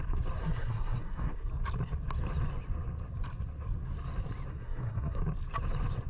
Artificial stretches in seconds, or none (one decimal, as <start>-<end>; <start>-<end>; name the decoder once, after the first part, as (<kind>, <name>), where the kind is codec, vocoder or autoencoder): 0.4-1.5 (codec, SNAC); 4.5-5.2